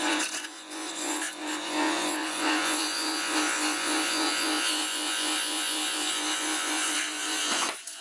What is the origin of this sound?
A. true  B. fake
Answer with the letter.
B